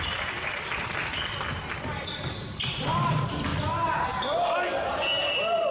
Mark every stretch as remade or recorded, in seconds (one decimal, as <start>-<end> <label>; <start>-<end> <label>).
0.0-0.7 remade; 0.7-2.0 recorded; 2.0-3.5 remade; 3.5-5.7 recorded